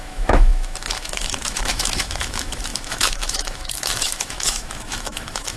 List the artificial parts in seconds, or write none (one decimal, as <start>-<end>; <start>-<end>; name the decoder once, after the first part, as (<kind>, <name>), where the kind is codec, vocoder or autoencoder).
0.0-5.6 (autoencoder, DAC-VAE)